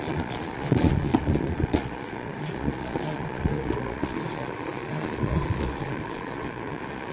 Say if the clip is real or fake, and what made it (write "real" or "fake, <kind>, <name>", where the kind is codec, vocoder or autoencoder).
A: fake, vocoder, Vocos